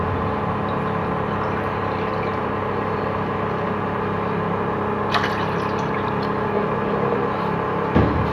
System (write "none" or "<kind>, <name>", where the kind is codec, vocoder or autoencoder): none